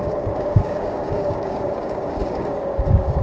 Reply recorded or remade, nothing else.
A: remade